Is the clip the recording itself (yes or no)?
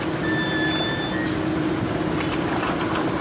yes